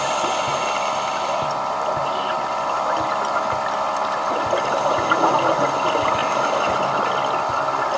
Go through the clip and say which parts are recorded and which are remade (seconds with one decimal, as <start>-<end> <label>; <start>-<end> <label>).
0.0-0.5 recorded; 0.5-5.3 remade; 5.3-6.2 recorded; 6.2-7.1 remade; 7.1-8.0 recorded